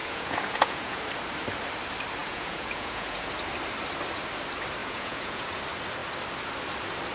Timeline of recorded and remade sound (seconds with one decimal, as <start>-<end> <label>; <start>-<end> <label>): 0.0-1.0 remade; 1.0-2.2 recorded; 2.2-3.3 remade; 3.3-4.8 recorded; 4.8-5.6 remade; 5.6-7.1 recorded